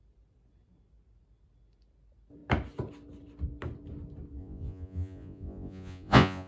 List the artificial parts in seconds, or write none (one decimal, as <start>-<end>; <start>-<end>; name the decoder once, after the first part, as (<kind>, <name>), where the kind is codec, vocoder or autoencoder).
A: 4.4-6.5 (vocoder, Vocos)